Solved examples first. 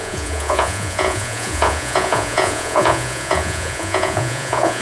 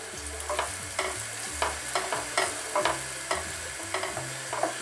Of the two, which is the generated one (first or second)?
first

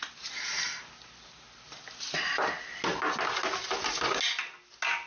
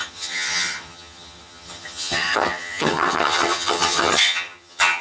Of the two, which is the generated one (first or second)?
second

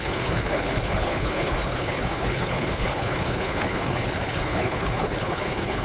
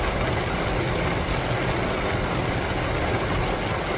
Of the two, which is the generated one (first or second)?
first